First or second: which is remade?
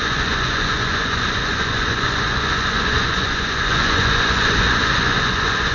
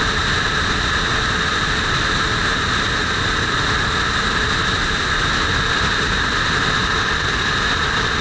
first